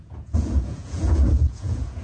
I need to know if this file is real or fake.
fake